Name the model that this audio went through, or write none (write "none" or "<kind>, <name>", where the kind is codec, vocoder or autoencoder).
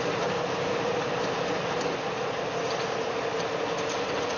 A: none